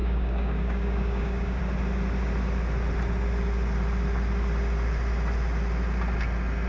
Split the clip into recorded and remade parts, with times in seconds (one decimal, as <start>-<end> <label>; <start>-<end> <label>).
0.0-1.6 remade; 1.6-6.7 recorded